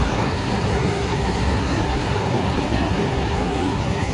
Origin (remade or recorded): remade